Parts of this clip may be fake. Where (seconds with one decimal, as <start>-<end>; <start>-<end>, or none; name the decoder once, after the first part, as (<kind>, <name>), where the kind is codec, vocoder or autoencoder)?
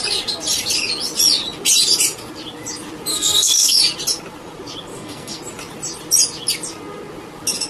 3.1-3.8 (codec, SNAC); 4.9-5.4